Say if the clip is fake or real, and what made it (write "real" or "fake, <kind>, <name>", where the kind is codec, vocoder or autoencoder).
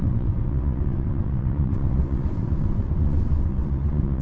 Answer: fake, vocoder, WaveNeXt